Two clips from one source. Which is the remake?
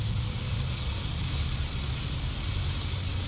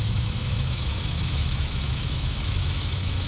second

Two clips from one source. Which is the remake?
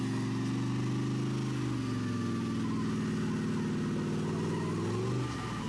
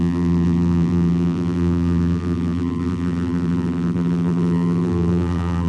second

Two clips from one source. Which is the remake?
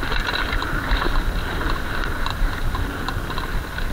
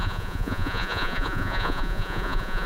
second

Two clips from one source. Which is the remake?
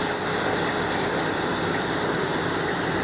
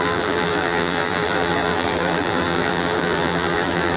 second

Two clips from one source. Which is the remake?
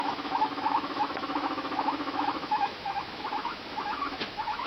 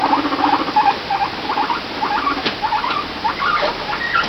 first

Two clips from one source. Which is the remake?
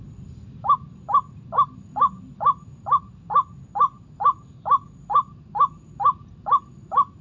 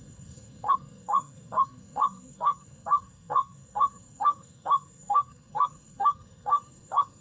second